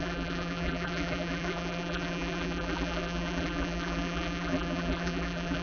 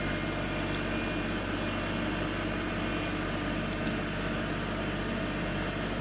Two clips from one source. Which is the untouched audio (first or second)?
second